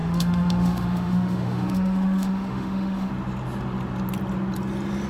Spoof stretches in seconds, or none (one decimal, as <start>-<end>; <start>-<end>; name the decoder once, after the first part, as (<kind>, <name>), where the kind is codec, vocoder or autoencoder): 0.0-3.1 (autoencoder, DAC-VAE)